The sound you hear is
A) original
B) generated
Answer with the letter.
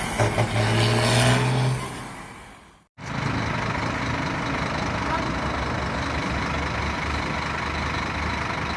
A